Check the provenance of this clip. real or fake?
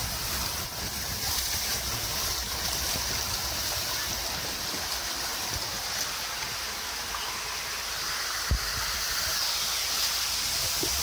real